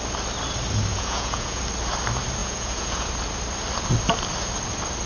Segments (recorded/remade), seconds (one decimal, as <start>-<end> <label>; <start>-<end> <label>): 0.0-0.9 recorded; 0.9-1.6 remade; 1.6-2.4 recorded; 2.4-3.1 remade; 3.1-5.1 recorded

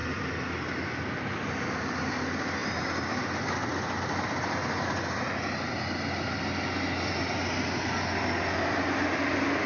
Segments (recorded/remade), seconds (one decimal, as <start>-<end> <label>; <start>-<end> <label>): 0.0-9.7 recorded